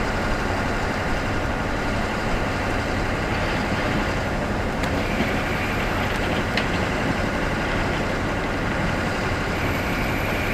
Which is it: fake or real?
fake